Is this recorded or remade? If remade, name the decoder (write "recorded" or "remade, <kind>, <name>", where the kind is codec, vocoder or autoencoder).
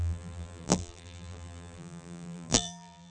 remade, vocoder, BigVGAN v2